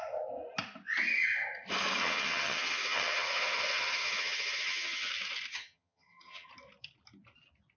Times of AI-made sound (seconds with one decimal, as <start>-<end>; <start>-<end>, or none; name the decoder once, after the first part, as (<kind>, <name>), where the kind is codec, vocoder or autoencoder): 2.0-5.1 (vocoder, HiFi-GAN); 5.5-6.5